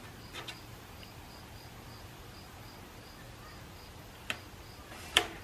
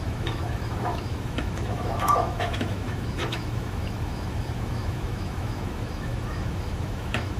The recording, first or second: first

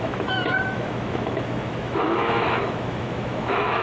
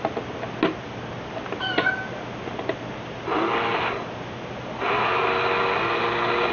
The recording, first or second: second